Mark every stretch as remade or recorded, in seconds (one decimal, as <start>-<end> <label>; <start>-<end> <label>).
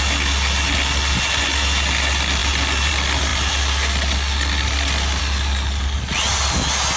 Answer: 0.0-7.0 recorded